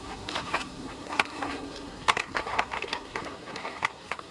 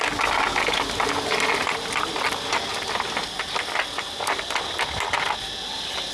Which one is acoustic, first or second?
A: second